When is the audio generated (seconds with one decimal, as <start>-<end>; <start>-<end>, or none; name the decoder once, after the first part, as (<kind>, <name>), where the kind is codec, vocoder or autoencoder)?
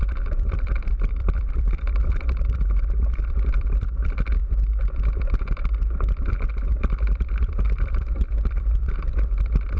0.0-4.4 (vocoder, BigVGAN v2); 6.7-9.8